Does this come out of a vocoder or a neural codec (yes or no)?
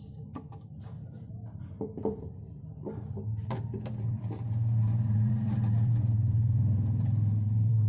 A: yes